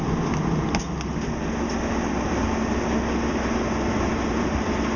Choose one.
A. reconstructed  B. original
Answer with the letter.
B